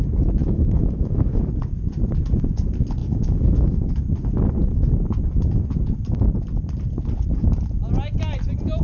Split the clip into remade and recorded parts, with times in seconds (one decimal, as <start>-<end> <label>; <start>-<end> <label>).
0.0-0.4 recorded; 0.4-1.4 remade; 1.4-3.0 recorded; 3.0-3.9 remade; 3.9-8.8 recorded